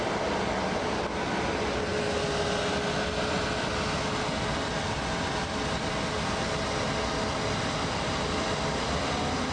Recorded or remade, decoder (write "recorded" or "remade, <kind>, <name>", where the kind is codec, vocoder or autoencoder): recorded